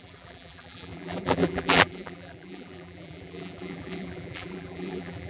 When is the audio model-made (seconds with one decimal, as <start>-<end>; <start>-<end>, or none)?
0.0-5.3